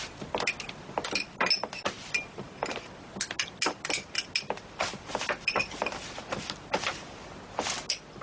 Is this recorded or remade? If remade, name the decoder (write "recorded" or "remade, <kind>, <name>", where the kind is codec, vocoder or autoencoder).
recorded